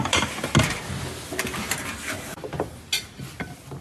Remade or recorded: recorded